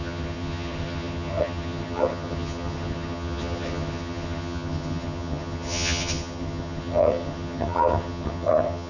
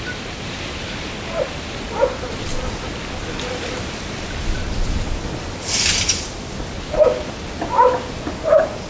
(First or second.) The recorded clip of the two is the second